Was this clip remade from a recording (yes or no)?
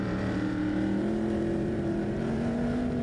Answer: yes